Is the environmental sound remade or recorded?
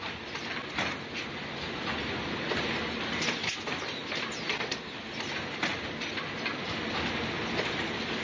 recorded